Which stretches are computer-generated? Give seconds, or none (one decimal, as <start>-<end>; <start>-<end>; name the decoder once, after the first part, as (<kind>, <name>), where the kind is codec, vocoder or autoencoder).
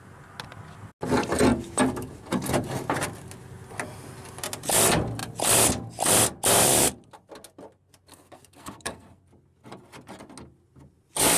8.1-9.2 (codec, SNAC)